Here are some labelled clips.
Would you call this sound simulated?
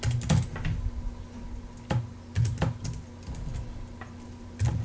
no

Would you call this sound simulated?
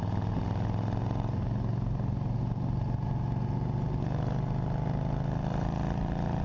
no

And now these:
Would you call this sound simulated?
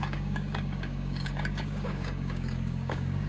yes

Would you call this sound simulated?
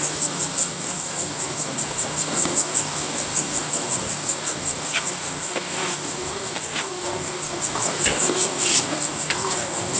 yes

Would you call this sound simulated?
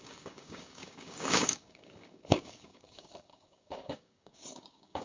yes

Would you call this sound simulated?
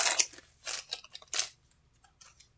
no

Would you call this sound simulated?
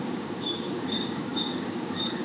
yes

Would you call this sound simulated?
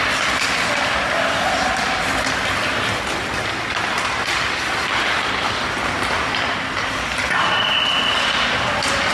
no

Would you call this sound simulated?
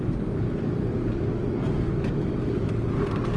yes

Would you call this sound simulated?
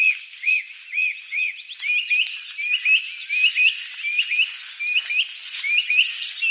no